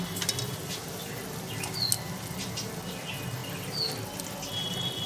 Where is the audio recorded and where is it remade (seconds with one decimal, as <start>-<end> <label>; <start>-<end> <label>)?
0.0-0.6 recorded; 0.6-1.2 remade; 1.2-5.1 recorded